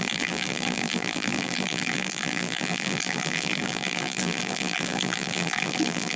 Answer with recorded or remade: remade